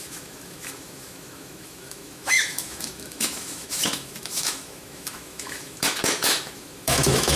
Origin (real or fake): fake